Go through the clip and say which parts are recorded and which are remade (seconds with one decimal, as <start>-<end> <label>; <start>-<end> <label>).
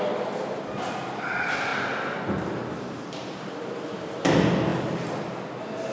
0.0-5.9 recorded